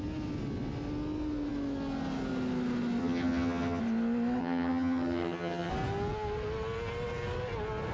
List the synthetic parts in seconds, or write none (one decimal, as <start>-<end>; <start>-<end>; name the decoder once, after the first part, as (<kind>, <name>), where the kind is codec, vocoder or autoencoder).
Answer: 3.0-3.8 (vocoder, HiFi-GAN); 4.4-5.7